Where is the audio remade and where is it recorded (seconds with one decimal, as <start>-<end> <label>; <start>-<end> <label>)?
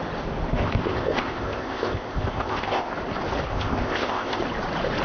0.0-0.5 recorded; 0.5-2.9 remade; 2.9-3.5 recorded; 3.5-4.4 remade; 4.4-5.0 recorded